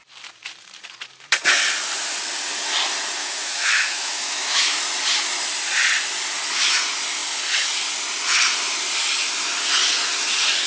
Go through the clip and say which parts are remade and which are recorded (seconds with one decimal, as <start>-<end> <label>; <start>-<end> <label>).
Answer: 0.0-3.2 recorded; 3.2-4.8 remade; 4.8-10.7 recorded